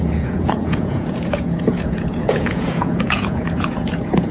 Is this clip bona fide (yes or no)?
no